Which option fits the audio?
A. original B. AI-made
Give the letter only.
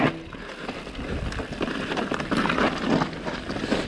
A